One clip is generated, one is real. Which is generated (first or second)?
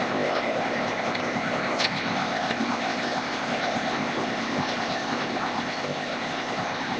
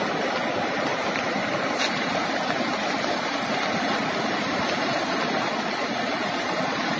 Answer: first